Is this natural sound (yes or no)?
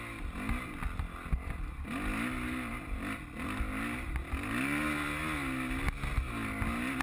yes